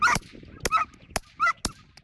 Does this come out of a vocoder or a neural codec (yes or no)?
no